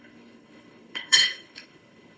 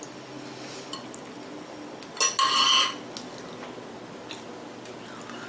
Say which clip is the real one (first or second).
second